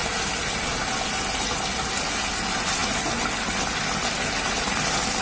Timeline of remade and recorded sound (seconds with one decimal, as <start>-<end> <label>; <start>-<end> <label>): 0.0-5.2 recorded